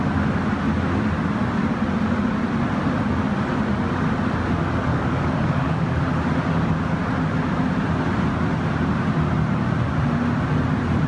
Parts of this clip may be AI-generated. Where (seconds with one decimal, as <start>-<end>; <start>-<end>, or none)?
4.9-6.0